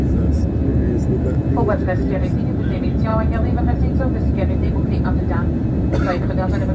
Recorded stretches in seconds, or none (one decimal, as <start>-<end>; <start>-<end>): 0.7-1.2